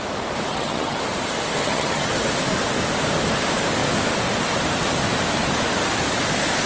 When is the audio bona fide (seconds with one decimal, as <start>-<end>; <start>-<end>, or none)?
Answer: 0.0-0.5; 1.0-1.6; 2.1-6.7